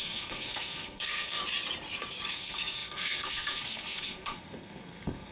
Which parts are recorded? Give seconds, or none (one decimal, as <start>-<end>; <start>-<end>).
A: 1.4-2.3